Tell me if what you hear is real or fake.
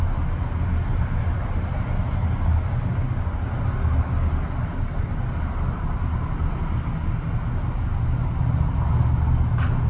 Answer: real